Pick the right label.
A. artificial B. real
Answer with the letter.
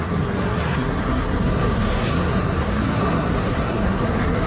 A